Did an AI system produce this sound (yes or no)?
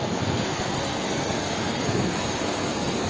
yes